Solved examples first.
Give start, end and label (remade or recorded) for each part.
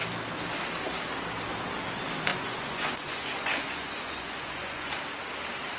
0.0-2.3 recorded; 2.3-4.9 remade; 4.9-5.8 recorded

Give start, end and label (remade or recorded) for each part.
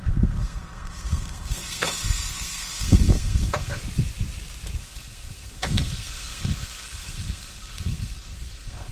0.0-3.8 remade; 3.8-4.8 recorded; 4.8-8.9 remade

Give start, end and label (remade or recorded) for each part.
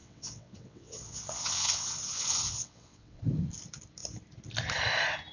0.0-3.2 remade; 3.2-5.3 recorded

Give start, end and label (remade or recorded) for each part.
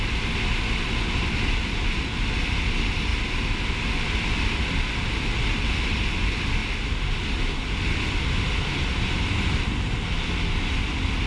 0.0-11.3 recorded